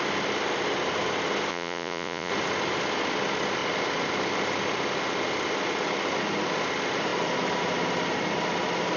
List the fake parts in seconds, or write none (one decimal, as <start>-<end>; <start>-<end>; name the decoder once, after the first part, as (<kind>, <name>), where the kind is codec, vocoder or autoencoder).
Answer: 1.5-2.3 (vocoder, Vocos)